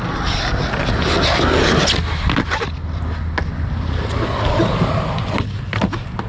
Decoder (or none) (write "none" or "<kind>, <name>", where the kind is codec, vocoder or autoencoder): none